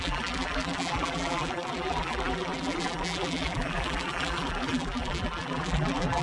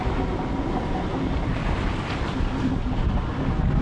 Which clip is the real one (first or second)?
second